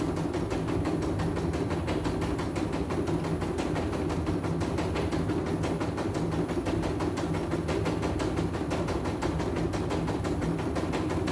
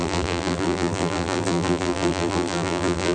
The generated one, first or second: second